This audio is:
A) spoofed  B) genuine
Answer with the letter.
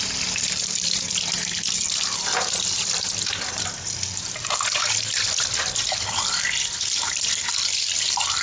A